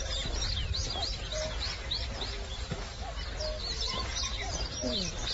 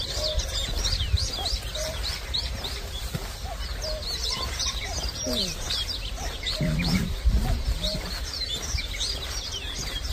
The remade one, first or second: second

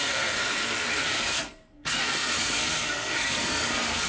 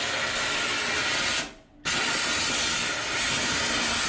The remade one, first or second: first